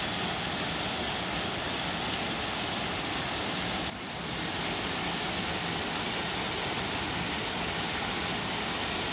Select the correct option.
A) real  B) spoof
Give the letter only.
A